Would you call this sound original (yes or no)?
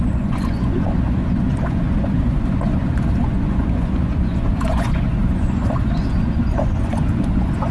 no